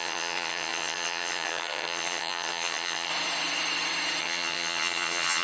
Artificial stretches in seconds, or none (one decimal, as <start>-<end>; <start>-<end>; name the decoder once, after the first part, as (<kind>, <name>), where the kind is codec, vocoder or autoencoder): 0.0-3.1 (vocoder, HiFi-GAN); 4.2-5.4